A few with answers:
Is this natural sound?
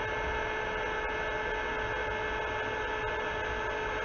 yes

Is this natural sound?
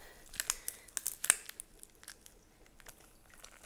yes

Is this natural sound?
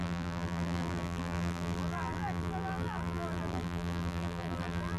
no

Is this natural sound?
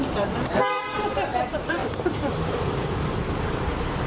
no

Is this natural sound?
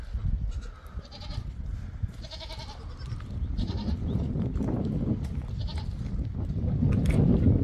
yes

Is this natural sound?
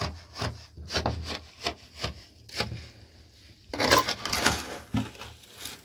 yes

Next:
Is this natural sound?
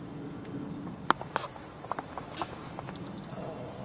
yes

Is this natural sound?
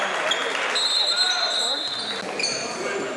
yes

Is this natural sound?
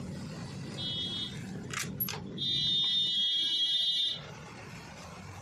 yes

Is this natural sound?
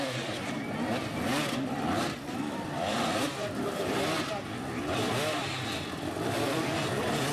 no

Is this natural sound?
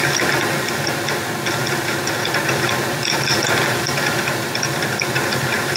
yes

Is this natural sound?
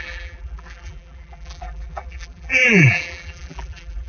no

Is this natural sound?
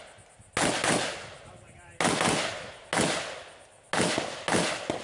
yes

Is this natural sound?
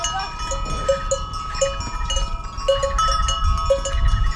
yes